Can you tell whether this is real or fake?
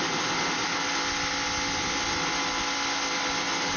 real